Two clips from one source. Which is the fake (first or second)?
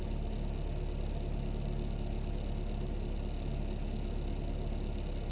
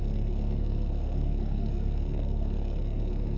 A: second